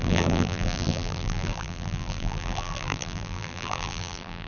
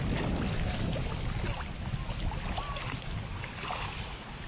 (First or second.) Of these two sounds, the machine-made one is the first